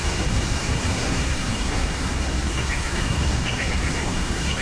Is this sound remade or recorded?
remade